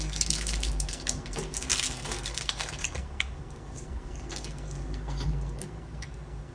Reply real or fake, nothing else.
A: fake